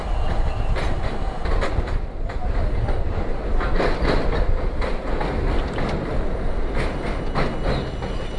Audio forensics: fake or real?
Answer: real